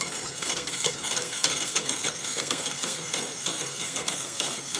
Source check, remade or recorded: remade